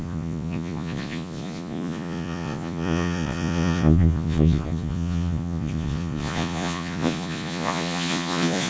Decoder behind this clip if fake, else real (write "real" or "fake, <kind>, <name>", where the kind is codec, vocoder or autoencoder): fake, vocoder, Vocos